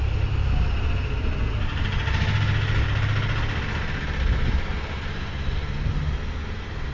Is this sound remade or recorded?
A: recorded